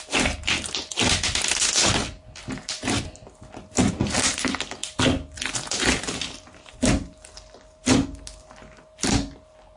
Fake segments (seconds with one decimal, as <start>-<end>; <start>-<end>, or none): none